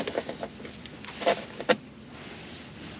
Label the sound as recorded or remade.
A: recorded